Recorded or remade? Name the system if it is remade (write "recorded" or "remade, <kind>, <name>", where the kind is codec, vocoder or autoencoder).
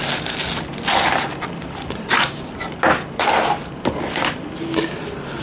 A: recorded